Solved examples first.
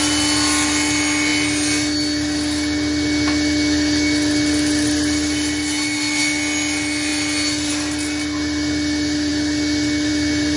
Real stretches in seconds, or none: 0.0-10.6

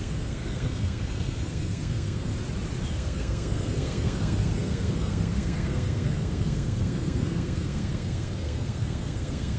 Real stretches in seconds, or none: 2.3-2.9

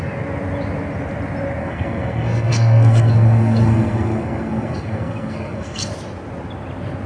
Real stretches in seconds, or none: 0.0-1.6; 5.9-7.1